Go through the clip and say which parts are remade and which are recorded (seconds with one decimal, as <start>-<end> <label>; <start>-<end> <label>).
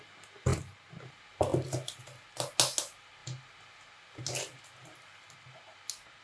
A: 0.0-6.2 recorded